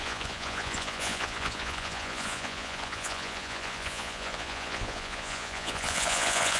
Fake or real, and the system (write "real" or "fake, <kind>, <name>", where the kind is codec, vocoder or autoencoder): fake, vocoder, Vocos